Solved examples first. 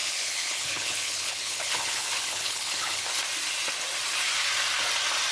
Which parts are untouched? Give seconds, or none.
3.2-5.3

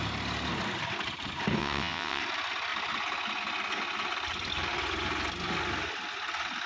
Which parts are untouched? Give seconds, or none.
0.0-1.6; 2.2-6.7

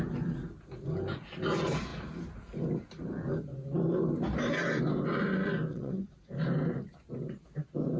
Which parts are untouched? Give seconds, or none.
0.0-5.7; 6.3-8.0

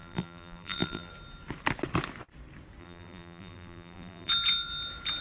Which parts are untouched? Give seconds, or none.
1.1-2.8; 4.3-5.2

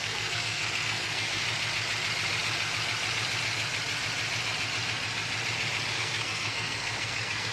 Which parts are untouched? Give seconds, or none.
1.4-5.9